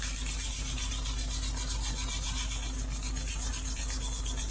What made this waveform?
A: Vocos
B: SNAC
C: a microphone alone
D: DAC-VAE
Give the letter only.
C